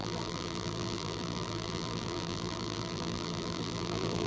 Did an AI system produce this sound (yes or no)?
yes